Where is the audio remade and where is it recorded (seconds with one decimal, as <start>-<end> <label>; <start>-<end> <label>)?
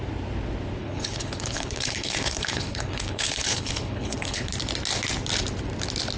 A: 0.0-0.8 recorded; 0.8-4.5 remade; 4.5-6.2 recorded